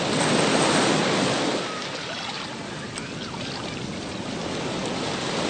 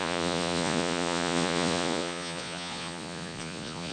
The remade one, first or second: second